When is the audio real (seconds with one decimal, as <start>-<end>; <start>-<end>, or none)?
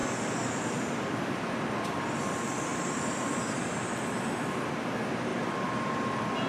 0.0-2.7; 3.9-5.3; 5.9-6.5